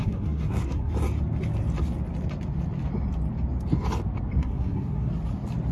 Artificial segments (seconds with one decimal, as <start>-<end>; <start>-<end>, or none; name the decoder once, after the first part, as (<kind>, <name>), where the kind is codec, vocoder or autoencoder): 0.0-0.9 (codec, SNAC); 4.4-5.1